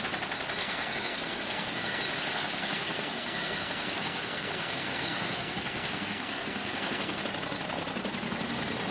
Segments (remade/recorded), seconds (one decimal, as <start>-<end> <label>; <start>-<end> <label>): 0.0-0.6 recorded; 0.6-2.0 remade; 2.0-2.6 recorded; 2.6-7.2 remade; 7.2-8.9 recorded